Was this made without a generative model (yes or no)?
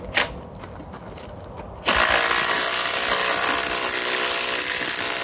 yes